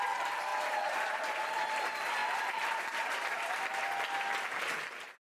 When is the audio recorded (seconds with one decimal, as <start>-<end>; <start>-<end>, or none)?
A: 0.0-0.5; 1.8-2.2; 3.8-5.3